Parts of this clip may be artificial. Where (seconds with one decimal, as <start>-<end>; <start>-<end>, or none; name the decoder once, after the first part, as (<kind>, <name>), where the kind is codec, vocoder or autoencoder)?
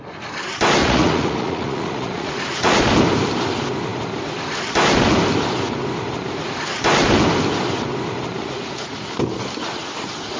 0.8-2.8 (vocoder, Vocos); 8.4-9.1